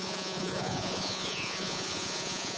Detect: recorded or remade remade